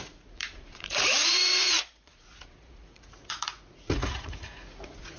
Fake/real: fake